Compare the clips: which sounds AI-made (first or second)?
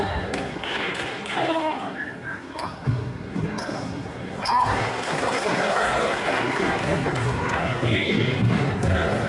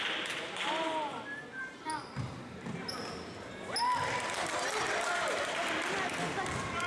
first